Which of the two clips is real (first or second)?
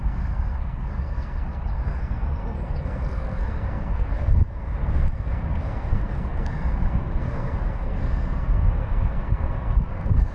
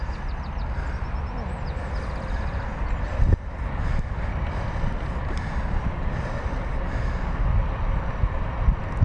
second